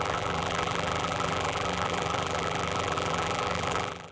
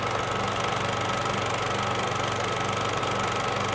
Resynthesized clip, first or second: first